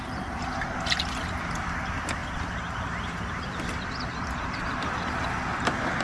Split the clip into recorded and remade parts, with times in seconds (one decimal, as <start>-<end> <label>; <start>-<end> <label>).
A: 0.0-6.0 recorded